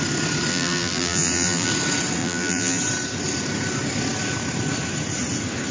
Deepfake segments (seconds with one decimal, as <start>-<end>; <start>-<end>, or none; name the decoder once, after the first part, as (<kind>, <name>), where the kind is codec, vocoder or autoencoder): 0.5-1.7 (vocoder, BigVGAN v2); 2.2-2.8

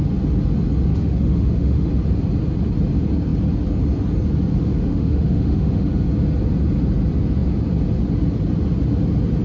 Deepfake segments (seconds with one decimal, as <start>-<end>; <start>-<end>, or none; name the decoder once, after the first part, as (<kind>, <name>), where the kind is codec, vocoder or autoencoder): 0.9-1.9 (autoencoder, DAC-VAE); 4.6-5.9